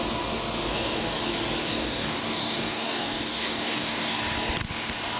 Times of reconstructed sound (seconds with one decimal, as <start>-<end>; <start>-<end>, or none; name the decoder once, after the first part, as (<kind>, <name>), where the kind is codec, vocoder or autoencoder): 0.7-1.2 (codec, DAC); 1.6-4.2